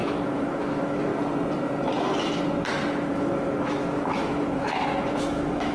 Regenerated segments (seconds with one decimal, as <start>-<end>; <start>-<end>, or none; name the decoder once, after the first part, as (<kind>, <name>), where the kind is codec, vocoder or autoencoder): 0.0-1.1 (autoencoder, DAC-VAE); 3.1-5.7